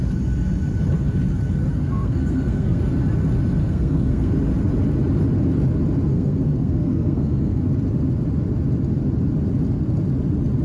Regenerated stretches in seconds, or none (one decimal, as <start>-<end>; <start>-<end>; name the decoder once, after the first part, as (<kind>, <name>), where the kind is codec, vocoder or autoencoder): 1.7-2.8 (codec, SNAC); 3.6-4.3; 6.1-7.6